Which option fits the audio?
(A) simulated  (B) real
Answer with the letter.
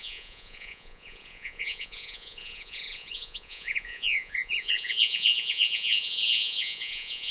A